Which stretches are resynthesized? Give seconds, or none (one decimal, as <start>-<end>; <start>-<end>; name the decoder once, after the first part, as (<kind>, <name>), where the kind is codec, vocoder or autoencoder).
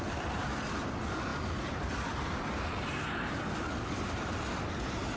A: 1.3-4.4 (vocoder, BigVGAN v2)